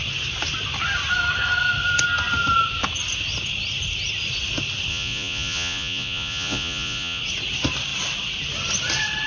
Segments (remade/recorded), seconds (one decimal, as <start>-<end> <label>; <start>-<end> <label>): 0.0-4.9 recorded; 4.9-7.2 remade; 7.2-9.3 recorded